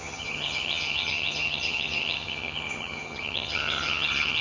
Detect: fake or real fake